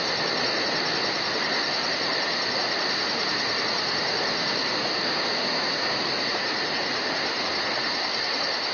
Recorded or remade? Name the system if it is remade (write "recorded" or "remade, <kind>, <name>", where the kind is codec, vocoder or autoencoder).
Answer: recorded